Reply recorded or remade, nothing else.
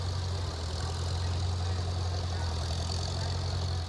recorded